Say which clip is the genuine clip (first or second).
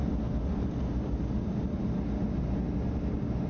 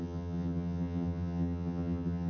first